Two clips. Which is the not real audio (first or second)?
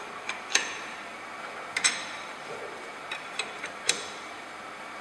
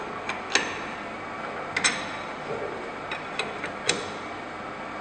first